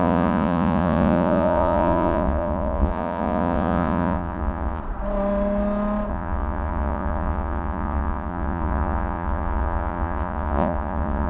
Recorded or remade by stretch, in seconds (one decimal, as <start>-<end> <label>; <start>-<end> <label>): 0.0-4.8 remade; 4.8-6.1 recorded; 6.1-11.3 remade